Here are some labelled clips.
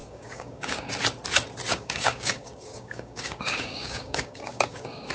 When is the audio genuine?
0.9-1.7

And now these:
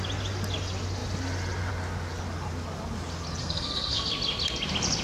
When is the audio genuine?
0.0-3.4; 4.1-5.0

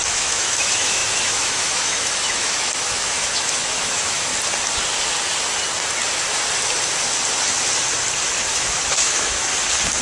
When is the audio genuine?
4.3-8.5; 9.5-10.0

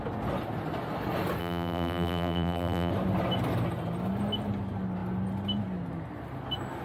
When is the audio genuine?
0.0-1.4; 2.9-6.8

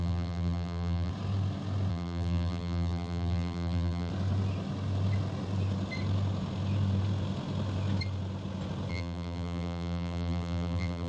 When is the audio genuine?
1.1-1.9; 4.1-8.9

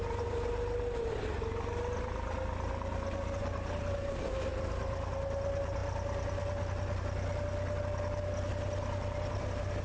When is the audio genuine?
0.0-3.4; 4.1-9.8

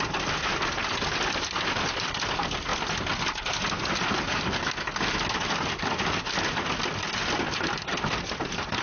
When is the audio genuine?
0.0-8.8

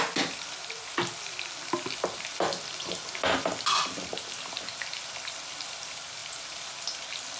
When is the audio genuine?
0.0-7.4